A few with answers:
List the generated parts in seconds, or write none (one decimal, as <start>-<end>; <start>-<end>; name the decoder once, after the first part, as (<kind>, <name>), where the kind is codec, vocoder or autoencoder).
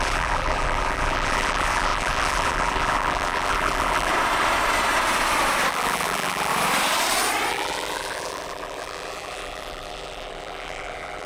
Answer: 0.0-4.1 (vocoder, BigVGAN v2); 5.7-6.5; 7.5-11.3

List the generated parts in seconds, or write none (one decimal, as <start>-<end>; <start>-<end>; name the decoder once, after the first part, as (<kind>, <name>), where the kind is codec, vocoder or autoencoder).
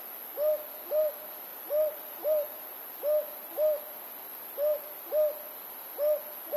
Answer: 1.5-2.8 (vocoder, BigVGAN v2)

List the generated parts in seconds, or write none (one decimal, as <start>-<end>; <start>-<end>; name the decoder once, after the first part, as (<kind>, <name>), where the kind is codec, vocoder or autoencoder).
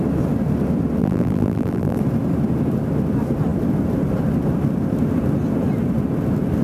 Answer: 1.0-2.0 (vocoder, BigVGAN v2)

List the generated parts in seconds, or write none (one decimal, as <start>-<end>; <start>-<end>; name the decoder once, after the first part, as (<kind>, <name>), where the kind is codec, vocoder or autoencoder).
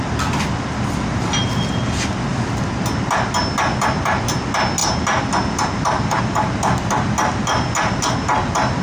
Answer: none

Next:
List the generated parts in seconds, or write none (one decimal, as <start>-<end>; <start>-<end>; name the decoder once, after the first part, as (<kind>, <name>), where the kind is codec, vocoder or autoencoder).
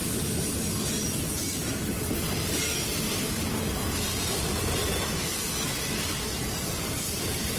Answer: none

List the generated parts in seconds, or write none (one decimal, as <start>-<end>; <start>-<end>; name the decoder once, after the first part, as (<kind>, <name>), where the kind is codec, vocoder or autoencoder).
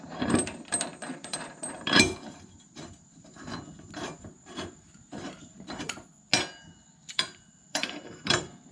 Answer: 0.0-6.1 (vocoder, BigVGAN v2); 7.1-8.7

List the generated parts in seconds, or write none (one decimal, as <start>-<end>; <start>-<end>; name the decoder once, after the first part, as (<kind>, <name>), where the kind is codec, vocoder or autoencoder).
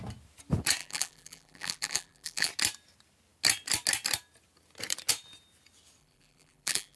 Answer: 0.8-2.5 (vocoder, BigVGAN v2); 6.0-7.0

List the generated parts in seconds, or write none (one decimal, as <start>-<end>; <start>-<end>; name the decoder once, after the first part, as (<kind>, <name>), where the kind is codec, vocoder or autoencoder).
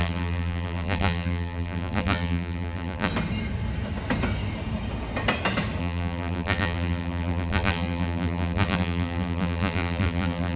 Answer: 0.0-3.1 (vocoder, BigVGAN v2); 5.8-10.6